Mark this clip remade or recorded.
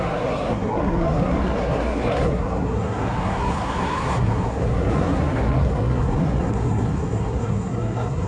remade